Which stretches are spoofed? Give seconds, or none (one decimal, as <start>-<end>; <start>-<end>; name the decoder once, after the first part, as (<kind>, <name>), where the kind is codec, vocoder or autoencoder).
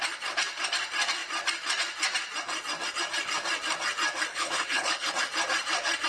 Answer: 4.3-5.1 (codec, HILCodec)